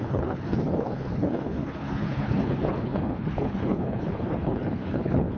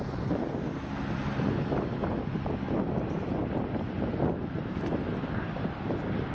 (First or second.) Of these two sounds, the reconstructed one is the first